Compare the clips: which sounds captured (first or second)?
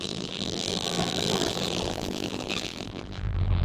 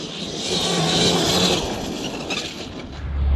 second